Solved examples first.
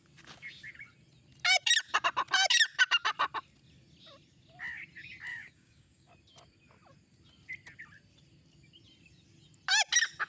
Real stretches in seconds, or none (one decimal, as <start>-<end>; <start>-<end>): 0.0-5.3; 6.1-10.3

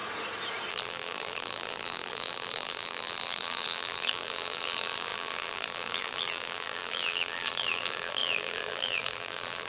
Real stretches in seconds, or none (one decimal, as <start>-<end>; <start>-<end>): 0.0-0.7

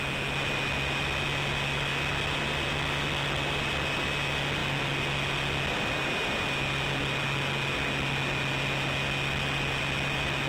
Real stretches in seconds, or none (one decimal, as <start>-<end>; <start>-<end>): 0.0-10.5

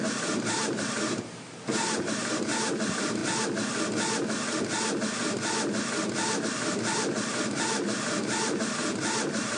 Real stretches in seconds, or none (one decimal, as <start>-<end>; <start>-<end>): 3.2-6.4